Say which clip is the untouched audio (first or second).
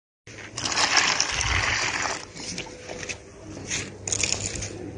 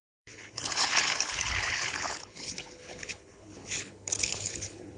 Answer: first